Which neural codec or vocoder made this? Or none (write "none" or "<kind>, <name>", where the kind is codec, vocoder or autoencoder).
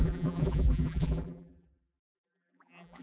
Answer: vocoder, BigVGAN v2